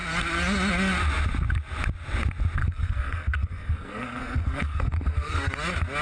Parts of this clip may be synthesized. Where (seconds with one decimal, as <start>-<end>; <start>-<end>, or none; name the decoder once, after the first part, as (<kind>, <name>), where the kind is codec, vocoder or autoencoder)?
2.6-5.5 (codec, SNAC)